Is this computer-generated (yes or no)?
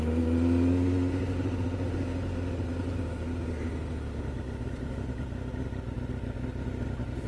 no